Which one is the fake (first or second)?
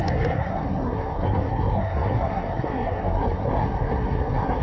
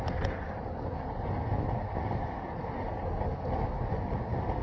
first